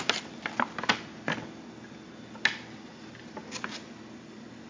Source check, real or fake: real